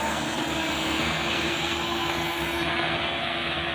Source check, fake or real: fake